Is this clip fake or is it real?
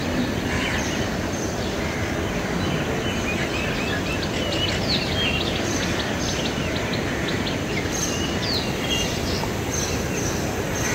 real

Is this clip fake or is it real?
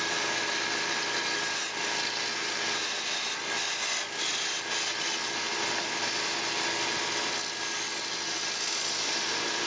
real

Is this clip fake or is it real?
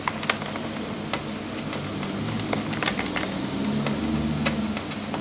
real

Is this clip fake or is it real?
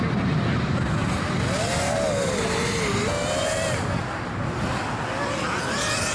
real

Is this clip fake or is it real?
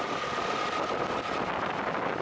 real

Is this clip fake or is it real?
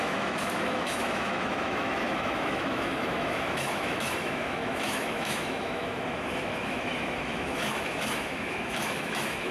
fake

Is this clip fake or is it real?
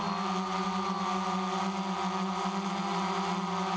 real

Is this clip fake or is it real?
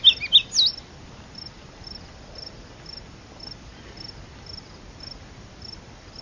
real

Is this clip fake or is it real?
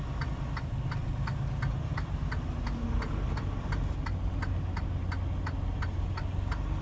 real